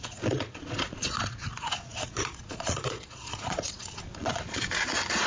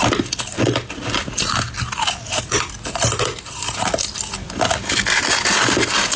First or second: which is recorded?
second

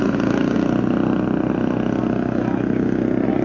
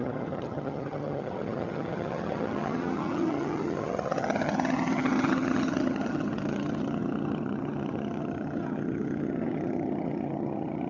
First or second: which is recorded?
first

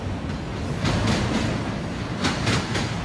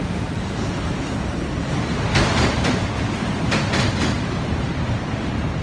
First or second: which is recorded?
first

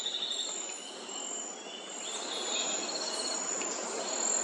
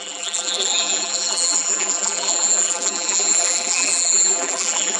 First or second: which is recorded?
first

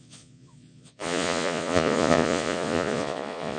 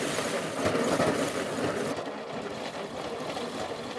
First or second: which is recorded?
second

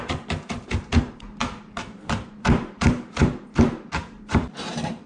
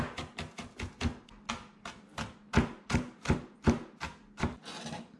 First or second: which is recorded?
second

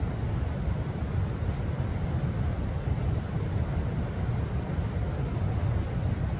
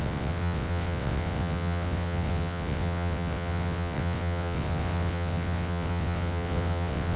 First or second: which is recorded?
first